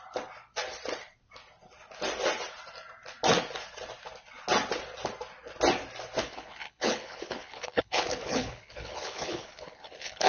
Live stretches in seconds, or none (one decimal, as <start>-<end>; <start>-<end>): 0.0-6.2